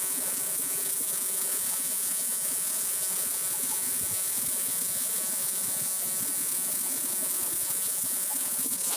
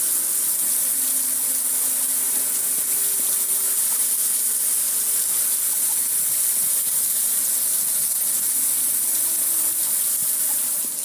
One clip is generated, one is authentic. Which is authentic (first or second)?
second